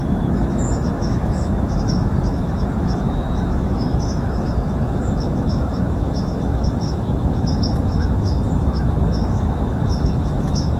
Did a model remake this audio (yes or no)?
yes